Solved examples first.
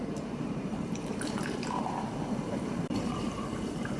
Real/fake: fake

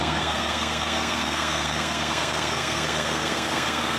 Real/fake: fake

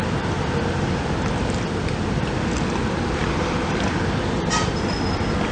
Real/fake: real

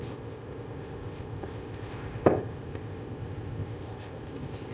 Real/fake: fake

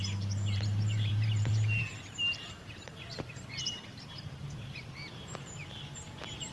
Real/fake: fake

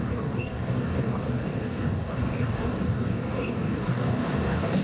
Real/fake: fake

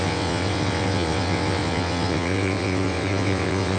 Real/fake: fake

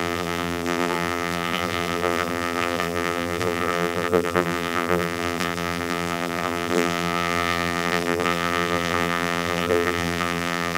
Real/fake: fake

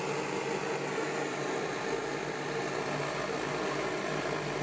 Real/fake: real